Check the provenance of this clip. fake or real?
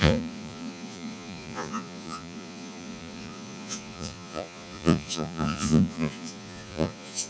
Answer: fake